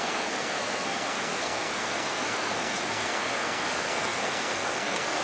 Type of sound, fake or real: fake